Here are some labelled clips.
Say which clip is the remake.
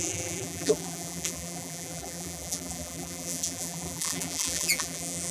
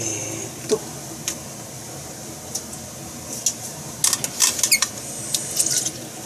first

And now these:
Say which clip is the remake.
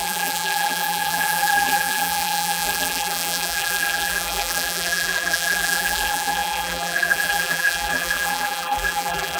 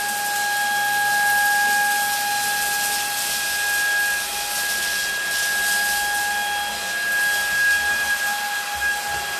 first